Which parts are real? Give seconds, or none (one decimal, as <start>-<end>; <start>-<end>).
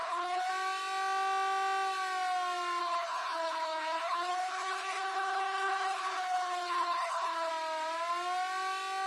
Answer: 0.5-2.8; 7.5-9.1